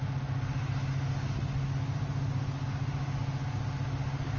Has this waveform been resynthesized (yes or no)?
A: no